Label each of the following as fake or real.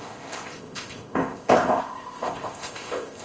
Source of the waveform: fake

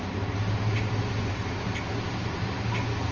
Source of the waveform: real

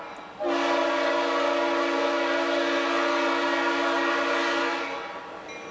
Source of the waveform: real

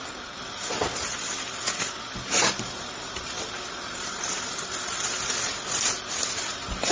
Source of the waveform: real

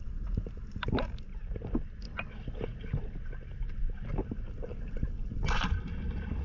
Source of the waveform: real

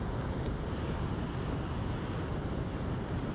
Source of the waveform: real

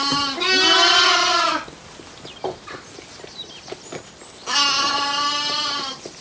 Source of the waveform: real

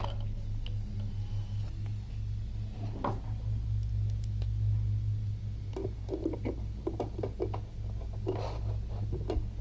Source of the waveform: real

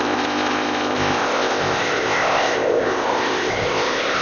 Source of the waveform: fake